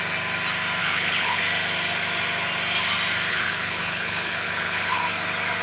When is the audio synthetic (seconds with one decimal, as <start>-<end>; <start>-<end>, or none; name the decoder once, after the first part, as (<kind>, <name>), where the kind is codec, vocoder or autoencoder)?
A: 0.8-1.4 (codec, HILCodec); 3.3-5.0